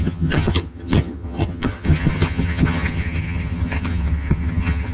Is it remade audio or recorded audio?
remade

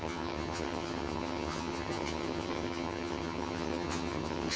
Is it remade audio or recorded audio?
remade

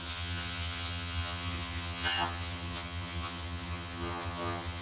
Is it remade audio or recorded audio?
remade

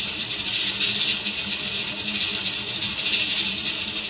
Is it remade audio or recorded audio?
recorded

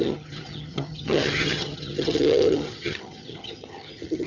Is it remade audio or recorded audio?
remade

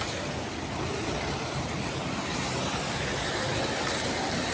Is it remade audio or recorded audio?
recorded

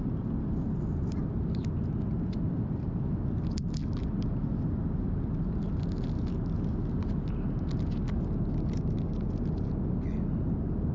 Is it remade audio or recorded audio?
recorded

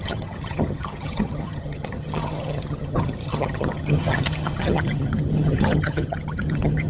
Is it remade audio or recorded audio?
remade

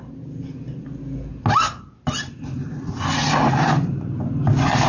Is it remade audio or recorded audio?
recorded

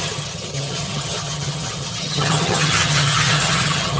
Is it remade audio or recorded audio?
remade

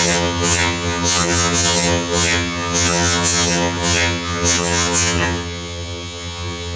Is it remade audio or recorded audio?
remade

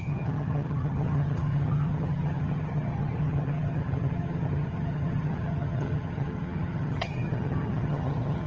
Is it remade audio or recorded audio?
remade